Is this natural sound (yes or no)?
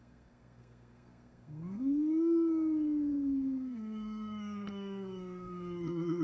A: no